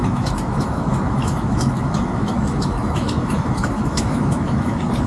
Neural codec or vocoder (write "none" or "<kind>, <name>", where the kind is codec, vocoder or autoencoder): autoencoder, DAC-VAE